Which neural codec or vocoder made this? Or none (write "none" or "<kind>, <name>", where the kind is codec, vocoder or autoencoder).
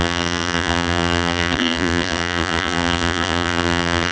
vocoder, BigVGAN v2